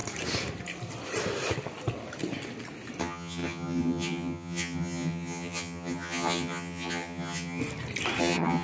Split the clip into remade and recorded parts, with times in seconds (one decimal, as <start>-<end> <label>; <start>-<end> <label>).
0.0-3.0 recorded; 3.0-7.6 remade; 7.6-8.2 recorded; 8.2-8.6 remade